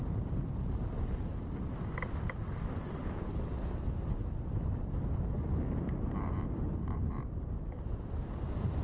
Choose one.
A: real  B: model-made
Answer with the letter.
A